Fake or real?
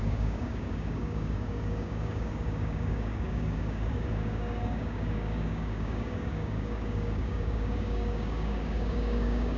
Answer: fake